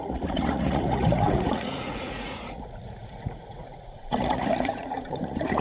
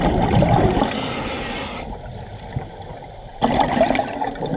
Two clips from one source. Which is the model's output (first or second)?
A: first